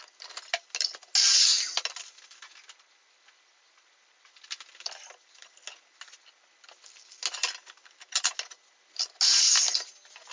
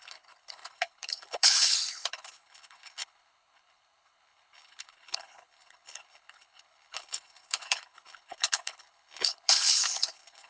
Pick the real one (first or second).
first